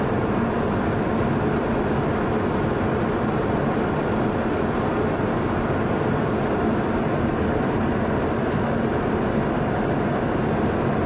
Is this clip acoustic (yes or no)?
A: yes